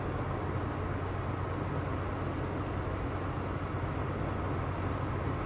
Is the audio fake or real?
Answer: real